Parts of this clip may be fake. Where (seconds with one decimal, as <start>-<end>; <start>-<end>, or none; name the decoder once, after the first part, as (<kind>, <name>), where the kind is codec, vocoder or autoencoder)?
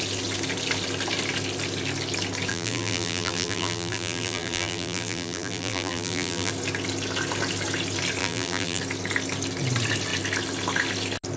2.5-6.5 (vocoder, BigVGAN v2); 8.2-8.8